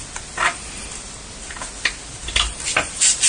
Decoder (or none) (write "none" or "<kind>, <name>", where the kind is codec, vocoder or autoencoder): none